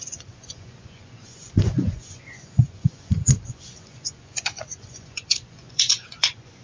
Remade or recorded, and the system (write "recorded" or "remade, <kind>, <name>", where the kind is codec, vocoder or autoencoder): remade, vocoder, Vocos